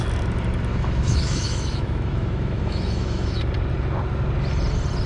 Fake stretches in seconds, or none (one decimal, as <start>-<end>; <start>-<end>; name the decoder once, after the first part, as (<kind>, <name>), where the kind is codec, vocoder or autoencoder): 0.7-3.4 (autoencoder, DAC-VAE)